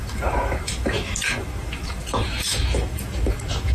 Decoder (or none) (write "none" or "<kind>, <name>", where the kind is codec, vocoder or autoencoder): autoencoder, DAC-VAE